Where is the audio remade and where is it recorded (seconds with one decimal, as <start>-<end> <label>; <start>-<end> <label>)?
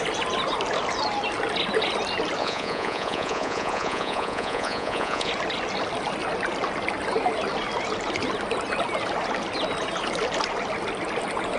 0.0-2.4 recorded; 2.4-5.3 remade; 5.3-11.6 recorded